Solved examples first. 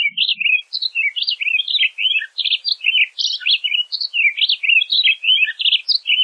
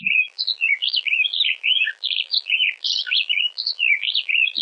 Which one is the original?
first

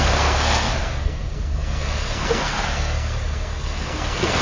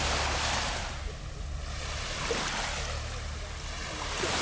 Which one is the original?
second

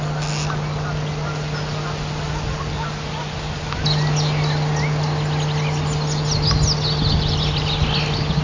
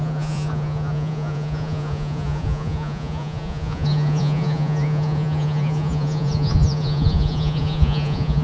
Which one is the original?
first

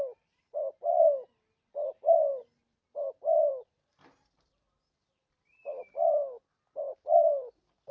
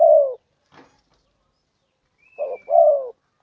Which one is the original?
second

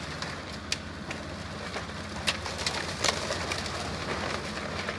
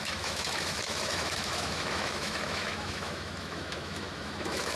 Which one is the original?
first